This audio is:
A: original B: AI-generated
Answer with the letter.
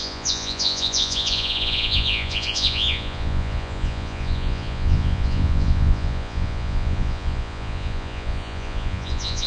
B